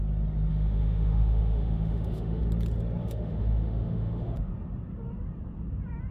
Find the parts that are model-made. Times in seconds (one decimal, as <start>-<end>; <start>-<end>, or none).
0.5-2.4; 3.0-4.5